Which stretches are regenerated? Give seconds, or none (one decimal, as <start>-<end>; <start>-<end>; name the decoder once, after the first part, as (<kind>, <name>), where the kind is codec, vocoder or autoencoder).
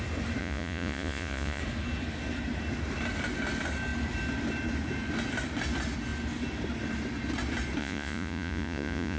0.4-1.6 (vocoder, Vocos); 7.8-9.2